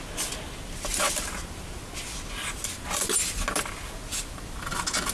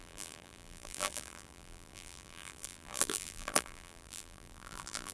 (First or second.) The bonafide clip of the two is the first